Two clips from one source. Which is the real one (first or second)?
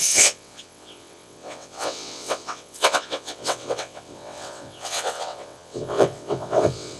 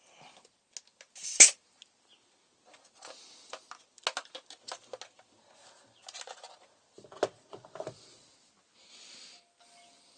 second